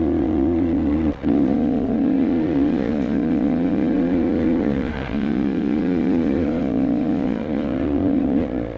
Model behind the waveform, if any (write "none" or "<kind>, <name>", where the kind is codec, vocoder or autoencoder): vocoder, Vocos